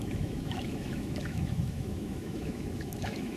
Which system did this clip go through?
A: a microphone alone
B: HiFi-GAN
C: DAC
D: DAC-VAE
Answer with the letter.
D